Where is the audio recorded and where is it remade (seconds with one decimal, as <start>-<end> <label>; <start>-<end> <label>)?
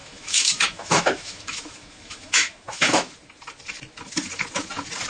0.0-3.1 remade; 3.1-5.1 recorded